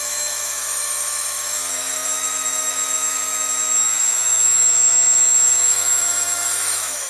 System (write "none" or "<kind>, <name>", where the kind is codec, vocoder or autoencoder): autoencoder, DAC-VAE